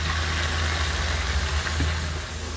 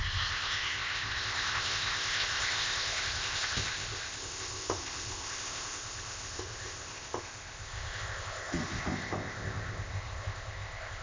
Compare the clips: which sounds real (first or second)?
first